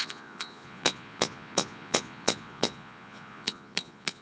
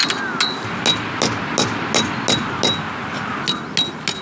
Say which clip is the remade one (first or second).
first